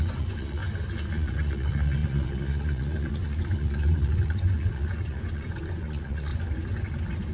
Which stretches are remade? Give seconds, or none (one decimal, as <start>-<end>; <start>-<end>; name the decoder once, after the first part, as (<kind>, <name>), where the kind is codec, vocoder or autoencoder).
0.0-0.6 (vocoder, Vocos); 1.1-6.3